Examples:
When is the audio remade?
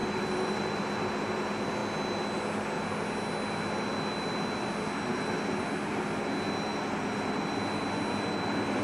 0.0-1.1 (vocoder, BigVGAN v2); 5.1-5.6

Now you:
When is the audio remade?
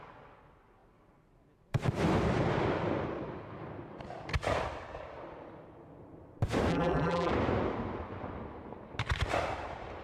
6.7-7.3 (vocoder, BigVGAN v2)